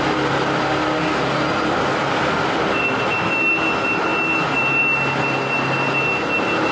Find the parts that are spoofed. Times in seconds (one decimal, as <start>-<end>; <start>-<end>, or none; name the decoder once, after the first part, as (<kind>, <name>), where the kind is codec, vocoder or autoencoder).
none